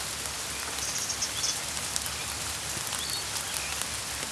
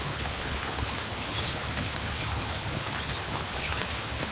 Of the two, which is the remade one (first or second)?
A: second